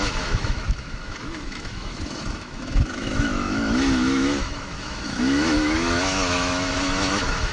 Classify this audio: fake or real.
fake